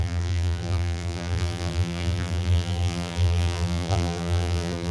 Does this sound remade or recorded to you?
remade